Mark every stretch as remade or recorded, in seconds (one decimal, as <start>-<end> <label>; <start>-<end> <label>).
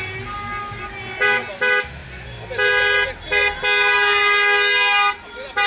0.0-5.7 recorded